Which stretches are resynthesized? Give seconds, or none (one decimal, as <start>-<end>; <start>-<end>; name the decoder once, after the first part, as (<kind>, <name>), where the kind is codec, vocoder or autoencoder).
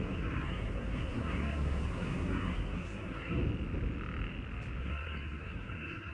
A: 0.0-3.4 (codec, SNAC); 4.8-6.1